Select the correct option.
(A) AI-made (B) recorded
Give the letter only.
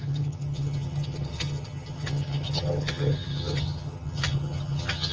A